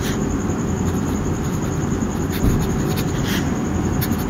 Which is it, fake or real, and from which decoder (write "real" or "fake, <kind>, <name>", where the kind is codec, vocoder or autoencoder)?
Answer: real